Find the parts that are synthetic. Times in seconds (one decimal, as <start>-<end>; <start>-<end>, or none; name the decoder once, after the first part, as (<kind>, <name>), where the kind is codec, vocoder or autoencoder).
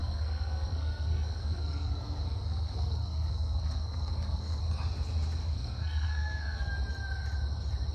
0.0-4.6 (codec, SNAC); 5.4-6.7